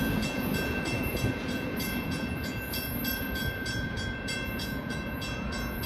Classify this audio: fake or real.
fake